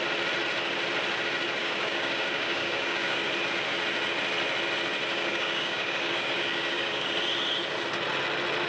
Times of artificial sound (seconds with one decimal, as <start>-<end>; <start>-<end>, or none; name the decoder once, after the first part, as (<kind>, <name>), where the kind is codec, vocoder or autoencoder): 1.6-3.3 (codec, DAC); 5.1-7.1